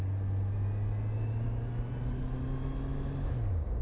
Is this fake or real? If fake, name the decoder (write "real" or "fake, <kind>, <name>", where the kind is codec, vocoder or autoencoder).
real